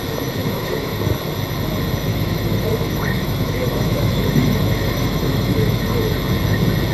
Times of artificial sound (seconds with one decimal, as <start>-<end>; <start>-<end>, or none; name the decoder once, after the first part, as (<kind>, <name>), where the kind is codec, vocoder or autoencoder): 0.4-1.0 (autoencoder, DAC-VAE); 2.1-6.0